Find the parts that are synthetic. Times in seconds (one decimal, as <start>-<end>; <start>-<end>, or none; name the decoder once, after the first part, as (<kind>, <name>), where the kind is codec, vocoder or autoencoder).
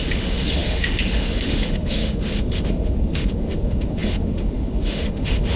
0.0-5.6 (autoencoder, DAC-VAE)